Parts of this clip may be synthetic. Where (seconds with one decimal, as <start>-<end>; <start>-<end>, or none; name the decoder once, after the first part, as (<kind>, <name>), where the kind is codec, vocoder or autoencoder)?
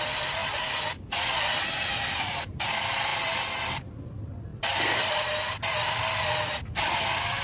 none